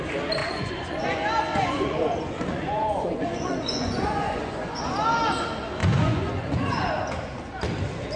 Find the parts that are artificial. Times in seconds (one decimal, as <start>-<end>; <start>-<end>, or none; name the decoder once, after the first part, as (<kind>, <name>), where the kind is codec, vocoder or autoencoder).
0.4-1.0 (vocoder, Vocos); 1.5-4.8; 5.8-6.9